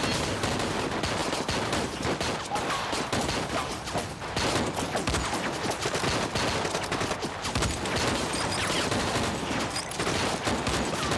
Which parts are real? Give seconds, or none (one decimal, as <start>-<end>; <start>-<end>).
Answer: 0.0-11.2